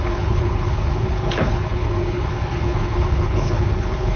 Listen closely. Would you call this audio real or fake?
fake